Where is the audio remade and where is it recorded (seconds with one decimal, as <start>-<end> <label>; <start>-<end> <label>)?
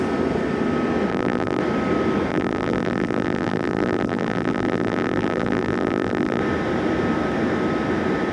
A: 0.0-1.1 recorded; 1.1-1.6 remade; 1.6-2.3 recorded; 2.3-6.4 remade; 6.4-8.3 recorded